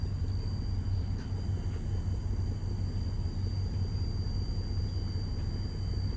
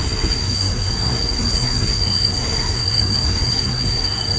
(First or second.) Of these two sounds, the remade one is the second